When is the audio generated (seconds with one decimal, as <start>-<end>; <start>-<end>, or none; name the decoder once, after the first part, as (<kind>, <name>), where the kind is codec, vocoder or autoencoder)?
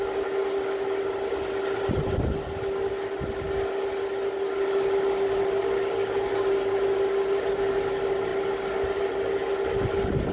none